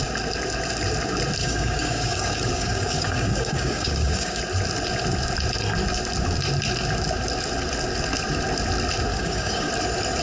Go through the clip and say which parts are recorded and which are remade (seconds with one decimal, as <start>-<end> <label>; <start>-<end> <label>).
0.0-1.4 recorded; 1.4-4.4 remade; 4.4-9.1 recorded; 9.1-9.7 remade; 9.7-10.2 recorded